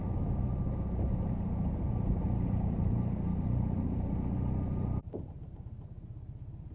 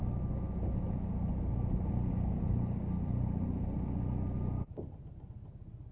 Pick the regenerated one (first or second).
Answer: first